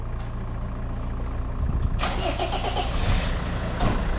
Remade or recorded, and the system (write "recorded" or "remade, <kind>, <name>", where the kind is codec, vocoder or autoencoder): recorded